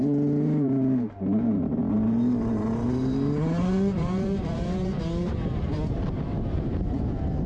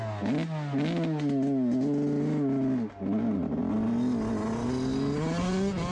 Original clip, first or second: second